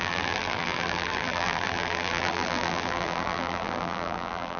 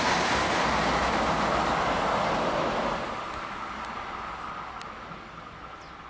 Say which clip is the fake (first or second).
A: first